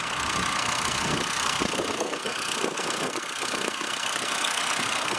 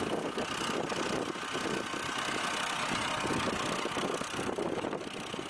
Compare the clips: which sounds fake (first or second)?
first